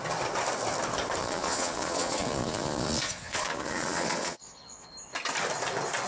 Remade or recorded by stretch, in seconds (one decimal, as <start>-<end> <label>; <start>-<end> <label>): 0.0-1.2 recorded; 1.2-4.9 remade; 4.9-6.1 recorded